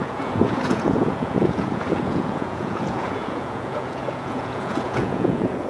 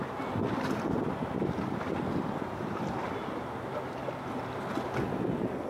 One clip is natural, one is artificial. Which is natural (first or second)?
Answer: second